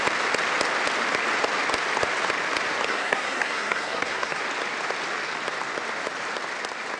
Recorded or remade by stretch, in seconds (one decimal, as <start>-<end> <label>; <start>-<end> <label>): 0.0-2.9 recorded; 2.9-4.4 remade; 4.4-7.0 recorded